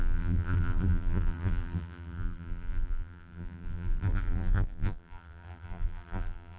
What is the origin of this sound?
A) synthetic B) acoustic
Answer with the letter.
A